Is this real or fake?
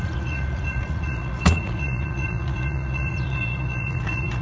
fake